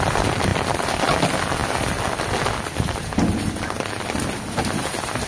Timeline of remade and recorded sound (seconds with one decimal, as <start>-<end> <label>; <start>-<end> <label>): 0.0-5.3 recorded